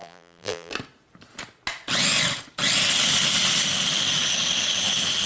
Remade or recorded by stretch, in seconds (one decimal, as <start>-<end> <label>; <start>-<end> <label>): 0.0-0.7 remade; 0.7-5.3 recorded